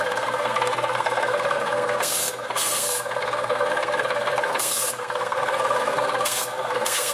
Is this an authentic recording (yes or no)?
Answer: no